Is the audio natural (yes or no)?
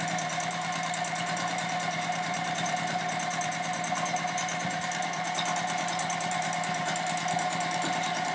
no